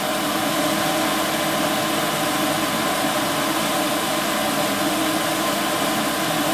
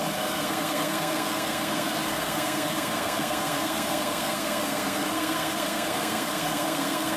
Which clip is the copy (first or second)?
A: second